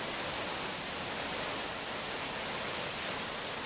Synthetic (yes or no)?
no